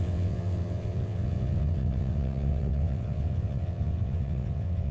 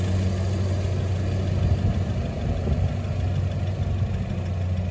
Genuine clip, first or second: second